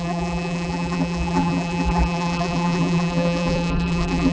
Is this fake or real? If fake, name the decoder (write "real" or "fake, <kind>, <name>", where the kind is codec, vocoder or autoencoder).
fake, vocoder, BigVGAN v2